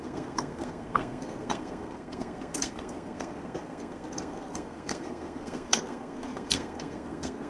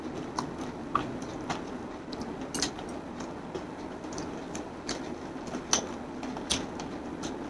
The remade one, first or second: first